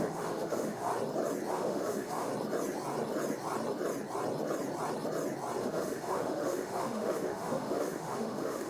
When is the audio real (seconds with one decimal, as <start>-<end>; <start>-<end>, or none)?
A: 0.9-1.5; 2.3-5.6